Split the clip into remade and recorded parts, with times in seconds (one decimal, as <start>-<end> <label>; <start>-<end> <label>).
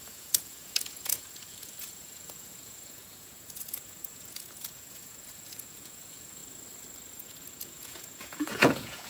0.0-6.4 remade; 6.4-7.2 recorded; 7.2-9.1 remade